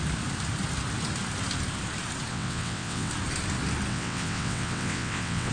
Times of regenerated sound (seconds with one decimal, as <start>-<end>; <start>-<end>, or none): 2.3-3.1; 3.9-5.5